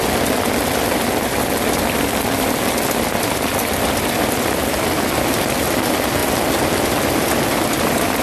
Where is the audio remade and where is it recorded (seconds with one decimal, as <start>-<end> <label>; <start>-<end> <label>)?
0.0-8.2 recorded